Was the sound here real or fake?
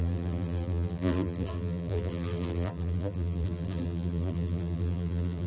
fake